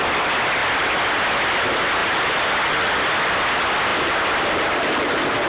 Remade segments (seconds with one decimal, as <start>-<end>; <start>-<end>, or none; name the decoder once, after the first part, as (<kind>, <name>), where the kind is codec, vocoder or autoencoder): none